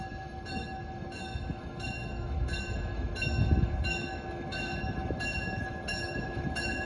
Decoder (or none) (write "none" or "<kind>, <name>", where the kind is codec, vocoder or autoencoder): autoencoder, DAC-VAE